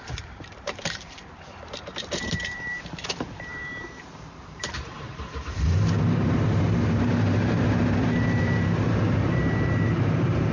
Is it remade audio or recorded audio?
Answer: remade